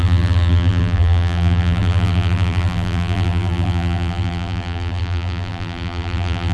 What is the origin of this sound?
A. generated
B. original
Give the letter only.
A